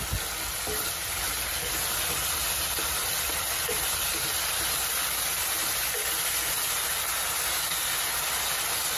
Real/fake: real